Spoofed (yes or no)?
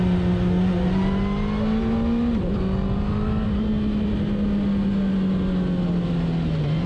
no